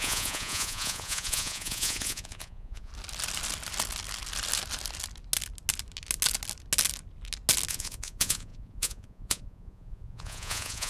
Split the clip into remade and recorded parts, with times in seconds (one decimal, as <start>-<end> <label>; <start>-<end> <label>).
0.0-2.9 remade; 2.9-7.7 recorded; 7.7-10.9 remade